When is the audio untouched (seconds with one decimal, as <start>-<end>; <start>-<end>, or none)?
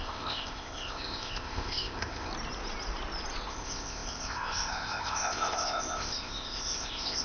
2.3-3.5